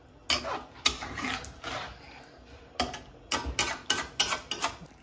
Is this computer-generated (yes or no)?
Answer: no